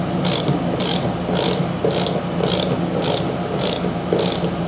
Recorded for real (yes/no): yes